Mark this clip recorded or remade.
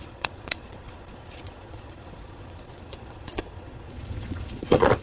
remade